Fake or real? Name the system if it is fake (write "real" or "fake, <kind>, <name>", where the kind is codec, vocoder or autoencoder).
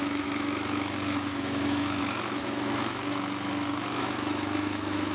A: fake, autoencoder, DAC-VAE